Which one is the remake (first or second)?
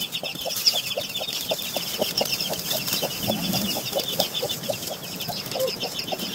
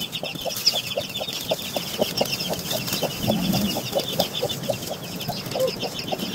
first